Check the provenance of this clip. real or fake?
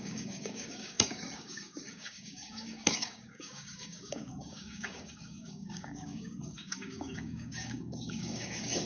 fake